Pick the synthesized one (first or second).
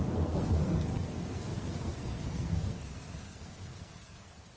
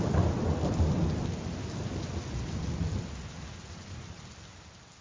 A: first